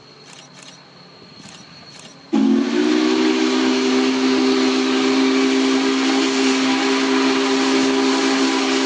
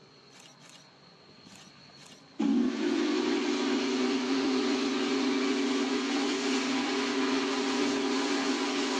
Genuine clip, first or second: first